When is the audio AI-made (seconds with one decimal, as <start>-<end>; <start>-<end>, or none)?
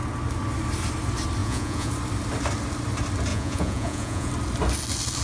1.4-1.9; 3.3-4.3